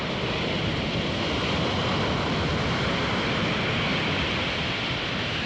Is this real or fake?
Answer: real